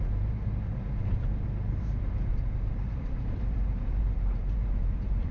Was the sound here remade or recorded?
remade